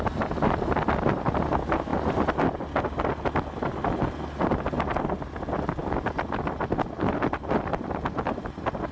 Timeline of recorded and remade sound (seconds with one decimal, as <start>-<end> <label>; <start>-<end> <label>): 0.0-8.9 recorded